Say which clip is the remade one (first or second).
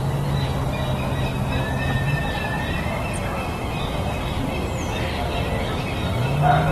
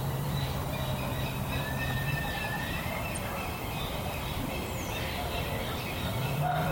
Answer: second